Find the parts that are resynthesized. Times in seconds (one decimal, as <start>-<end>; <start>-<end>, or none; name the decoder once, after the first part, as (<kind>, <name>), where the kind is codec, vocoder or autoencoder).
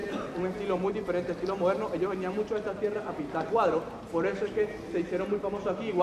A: 4.3-4.9 (autoencoder, DAC-VAE)